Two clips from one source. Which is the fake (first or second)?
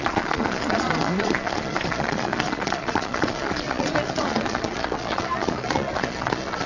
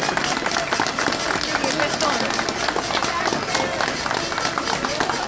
first